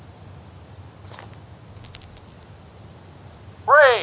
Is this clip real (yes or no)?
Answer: yes